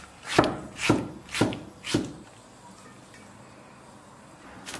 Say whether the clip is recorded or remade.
recorded